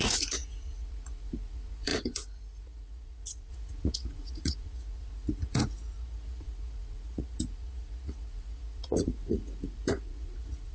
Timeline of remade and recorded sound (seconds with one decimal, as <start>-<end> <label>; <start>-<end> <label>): 0.0-10.7 remade